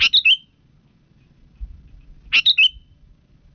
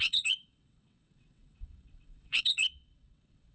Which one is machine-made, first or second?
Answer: second